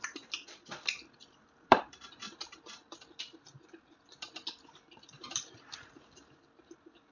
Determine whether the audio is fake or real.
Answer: fake